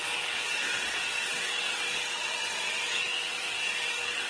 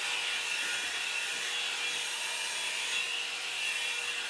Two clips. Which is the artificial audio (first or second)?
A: first